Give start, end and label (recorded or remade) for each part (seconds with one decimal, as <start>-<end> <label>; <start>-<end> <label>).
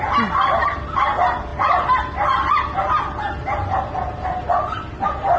0.0-5.4 recorded